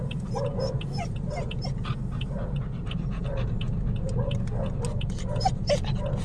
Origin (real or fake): real